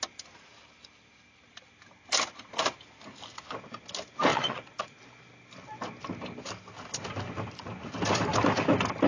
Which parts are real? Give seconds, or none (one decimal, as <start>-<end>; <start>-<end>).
0.0-4.3; 5.0-9.1